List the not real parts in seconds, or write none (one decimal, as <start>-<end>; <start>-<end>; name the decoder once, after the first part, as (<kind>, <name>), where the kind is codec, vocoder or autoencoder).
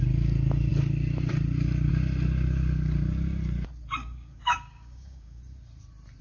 4.0-5.4 (codec, DAC)